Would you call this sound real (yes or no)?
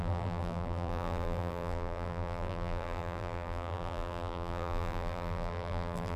no